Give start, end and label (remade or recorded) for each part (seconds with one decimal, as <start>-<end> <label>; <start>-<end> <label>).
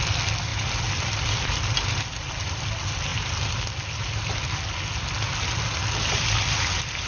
0.0-0.5 recorded; 0.5-1.7 remade; 1.7-7.1 recorded